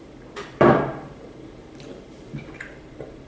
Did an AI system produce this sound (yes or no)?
yes